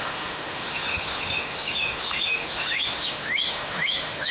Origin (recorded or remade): remade